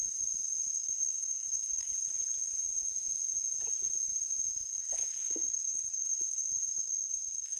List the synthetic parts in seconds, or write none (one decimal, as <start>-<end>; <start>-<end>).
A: 0.7-1.9; 4.5-7.6

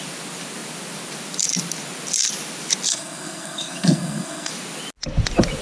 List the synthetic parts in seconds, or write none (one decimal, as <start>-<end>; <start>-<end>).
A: 2.9-4.5

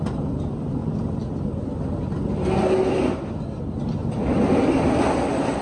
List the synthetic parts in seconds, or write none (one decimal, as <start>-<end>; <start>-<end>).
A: none

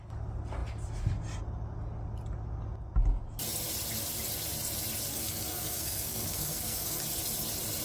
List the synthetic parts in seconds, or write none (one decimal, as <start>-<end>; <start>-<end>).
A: 5.1-7.0